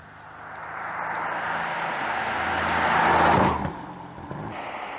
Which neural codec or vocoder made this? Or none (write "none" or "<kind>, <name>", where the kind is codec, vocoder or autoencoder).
none